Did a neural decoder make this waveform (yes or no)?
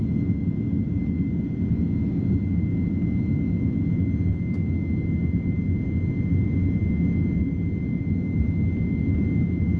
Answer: no